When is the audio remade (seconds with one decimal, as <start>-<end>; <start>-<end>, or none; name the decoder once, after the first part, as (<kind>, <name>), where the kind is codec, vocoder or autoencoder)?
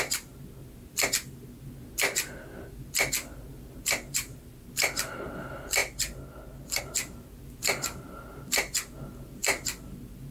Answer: 3.5-4.5 (vocoder, BigVGAN v2)